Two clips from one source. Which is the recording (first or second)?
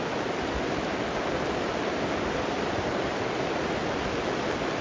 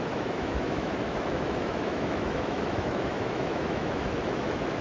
first